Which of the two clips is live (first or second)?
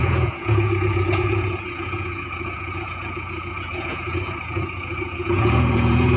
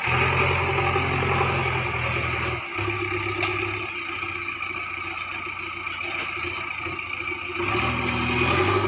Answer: second